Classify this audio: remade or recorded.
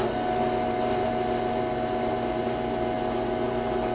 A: recorded